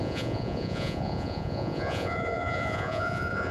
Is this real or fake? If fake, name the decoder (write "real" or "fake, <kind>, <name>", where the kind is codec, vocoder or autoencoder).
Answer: fake, vocoder, Vocos